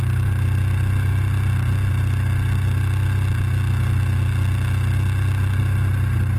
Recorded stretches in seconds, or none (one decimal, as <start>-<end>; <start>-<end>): 0.0-6.4